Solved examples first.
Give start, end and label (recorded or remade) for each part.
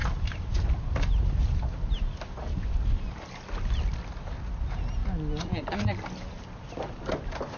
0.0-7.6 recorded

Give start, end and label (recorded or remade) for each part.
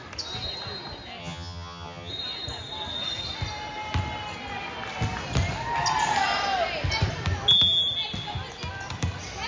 0.0-1.2 recorded; 1.2-2.1 remade; 2.1-9.5 recorded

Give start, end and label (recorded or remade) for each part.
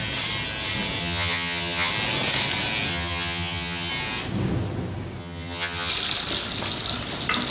0.0-1.0 recorded; 1.0-1.9 remade; 1.9-2.9 recorded; 2.9-3.9 remade; 3.9-5.2 recorded; 5.2-5.9 remade; 5.9-7.5 recorded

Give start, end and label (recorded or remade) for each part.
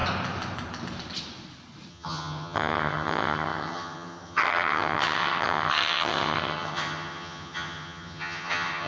0.0-1.9 recorded; 1.9-8.9 remade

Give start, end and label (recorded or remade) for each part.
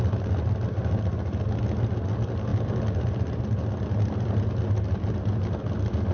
0.0-6.1 recorded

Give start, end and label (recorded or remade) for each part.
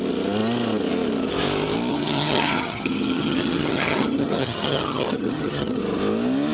0.0-1.9 recorded; 1.9-5.8 remade; 5.8-6.5 recorded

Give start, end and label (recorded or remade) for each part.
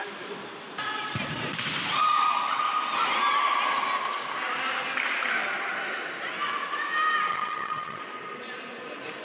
0.0-7.3 recorded; 7.3-8.0 remade; 8.0-9.2 recorded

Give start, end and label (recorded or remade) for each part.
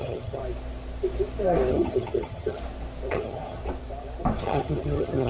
0.0-0.4 remade; 0.4-1.7 recorded; 1.7-2.6 remade; 2.6-3.1 recorded; 3.1-3.6 remade; 3.6-4.4 recorded; 4.4-5.3 remade